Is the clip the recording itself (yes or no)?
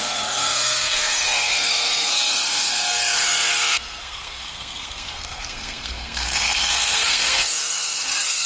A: no